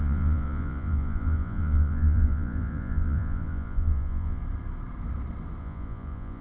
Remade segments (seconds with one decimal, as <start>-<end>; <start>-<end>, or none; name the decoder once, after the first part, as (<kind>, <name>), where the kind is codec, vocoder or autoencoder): 0.0-4.4 (vocoder, Vocos); 5.6-6.4